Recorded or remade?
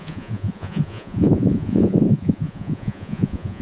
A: remade